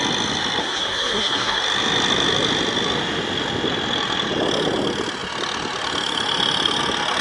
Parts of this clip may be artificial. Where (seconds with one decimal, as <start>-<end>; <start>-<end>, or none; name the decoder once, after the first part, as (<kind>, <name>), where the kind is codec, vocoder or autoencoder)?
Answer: 0.6-1.6 (codec, SNAC)